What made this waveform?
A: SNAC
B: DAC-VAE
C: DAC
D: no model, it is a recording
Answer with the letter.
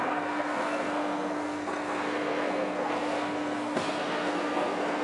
A